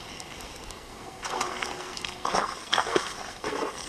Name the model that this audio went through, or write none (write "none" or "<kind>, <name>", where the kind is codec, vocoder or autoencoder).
codec, SNAC